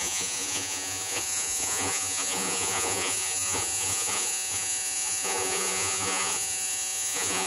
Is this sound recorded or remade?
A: remade